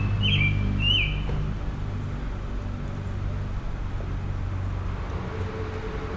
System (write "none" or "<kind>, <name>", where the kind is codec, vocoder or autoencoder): none